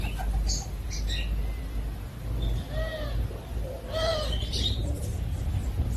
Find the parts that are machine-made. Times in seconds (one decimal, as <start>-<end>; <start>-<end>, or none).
none

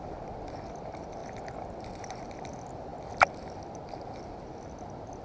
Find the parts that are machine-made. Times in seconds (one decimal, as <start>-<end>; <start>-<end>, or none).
none